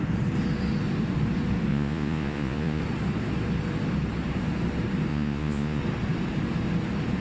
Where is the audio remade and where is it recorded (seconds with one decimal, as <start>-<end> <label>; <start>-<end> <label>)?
0.0-1.7 recorded; 1.7-2.8 remade; 2.8-5.1 recorded; 5.1-5.8 remade; 5.8-7.2 recorded